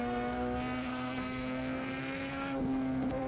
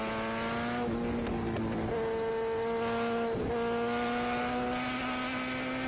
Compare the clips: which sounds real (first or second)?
second